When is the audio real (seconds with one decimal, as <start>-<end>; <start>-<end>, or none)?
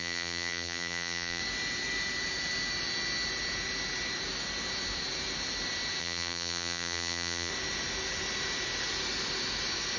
1.4-6.0; 7.5-10.0